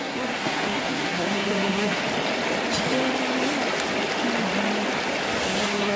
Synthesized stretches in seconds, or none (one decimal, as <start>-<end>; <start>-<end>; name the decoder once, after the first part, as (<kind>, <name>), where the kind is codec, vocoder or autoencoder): 0.0-2.0 (codec, SNAC); 5.6-6.0